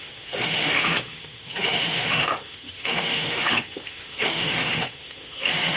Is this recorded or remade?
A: remade